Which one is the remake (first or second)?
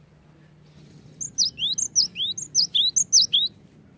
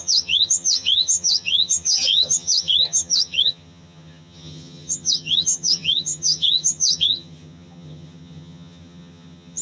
second